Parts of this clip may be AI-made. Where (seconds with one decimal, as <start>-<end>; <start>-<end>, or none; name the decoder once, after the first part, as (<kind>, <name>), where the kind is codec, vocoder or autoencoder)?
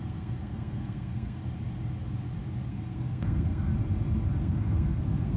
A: 0.0-1.4 (codec, SNAC); 2.7-3.7; 4.4-5.4